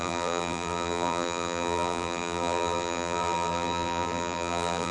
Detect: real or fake fake